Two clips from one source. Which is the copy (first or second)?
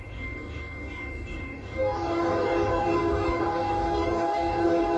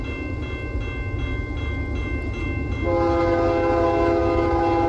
first